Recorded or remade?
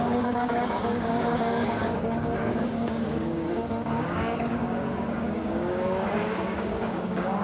remade